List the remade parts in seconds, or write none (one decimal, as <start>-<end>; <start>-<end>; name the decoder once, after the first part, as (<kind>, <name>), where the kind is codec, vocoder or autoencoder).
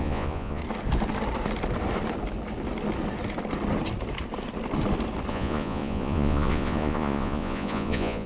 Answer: 0.0-0.6 (vocoder, Vocos); 5.3-8.3